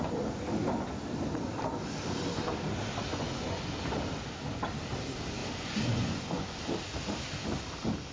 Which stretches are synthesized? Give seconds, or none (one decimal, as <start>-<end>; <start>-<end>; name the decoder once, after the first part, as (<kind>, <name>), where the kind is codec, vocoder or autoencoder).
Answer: 3.1-3.7 (vocoder, Vocos); 5.4-6.6